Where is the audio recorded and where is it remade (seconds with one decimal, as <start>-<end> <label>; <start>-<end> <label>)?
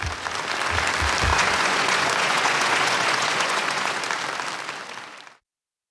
0.0-1.3 recorded; 1.3-4.0 remade; 4.0-5.9 recorded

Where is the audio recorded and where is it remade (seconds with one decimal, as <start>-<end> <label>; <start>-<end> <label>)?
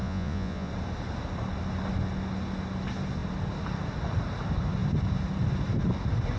0.0-0.7 remade; 0.7-6.4 recorded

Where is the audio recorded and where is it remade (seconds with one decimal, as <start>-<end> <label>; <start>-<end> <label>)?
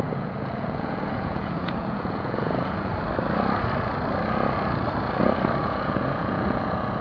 0.0-2.9 remade; 2.9-5.6 recorded; 5.6-7.0 remade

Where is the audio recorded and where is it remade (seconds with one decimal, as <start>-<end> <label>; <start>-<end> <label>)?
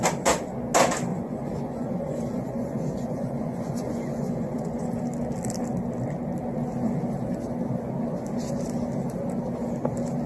0.0-1.1 recorded; 1.1-5.0 remade; 5.0-10.3 recorded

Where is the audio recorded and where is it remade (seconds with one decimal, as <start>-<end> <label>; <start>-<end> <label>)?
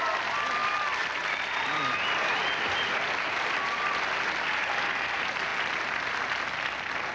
0.0-7.1 recorded